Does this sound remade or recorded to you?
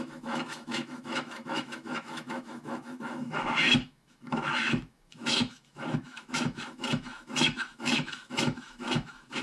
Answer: remade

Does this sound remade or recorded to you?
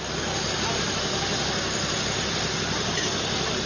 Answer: recorded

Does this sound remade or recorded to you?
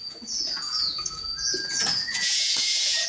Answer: remade